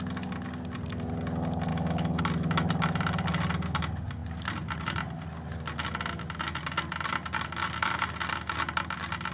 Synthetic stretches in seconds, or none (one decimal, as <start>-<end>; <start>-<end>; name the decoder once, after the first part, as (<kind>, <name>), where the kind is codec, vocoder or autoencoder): 1.7-2.2 (autoencoder, DAC-VAE)